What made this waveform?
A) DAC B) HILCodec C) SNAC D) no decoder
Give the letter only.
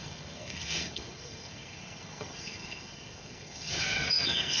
C